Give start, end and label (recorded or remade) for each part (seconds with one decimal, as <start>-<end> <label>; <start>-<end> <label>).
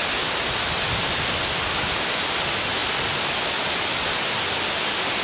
0.0-5.2 recorded